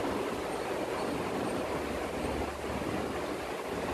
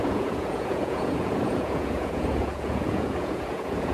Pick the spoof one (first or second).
second